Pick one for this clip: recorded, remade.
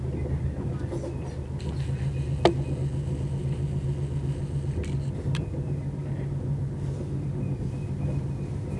recorded